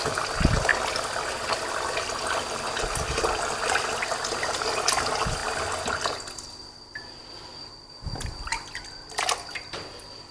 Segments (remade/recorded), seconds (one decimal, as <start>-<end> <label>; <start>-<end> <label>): 0.0-10.3 recorded